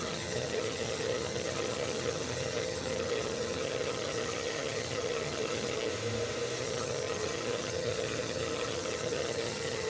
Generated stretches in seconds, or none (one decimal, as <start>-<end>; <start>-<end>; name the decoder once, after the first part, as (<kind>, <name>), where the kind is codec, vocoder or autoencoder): 0.0-5.9 (vocoder, HiFi-GAN); 6.6-9.9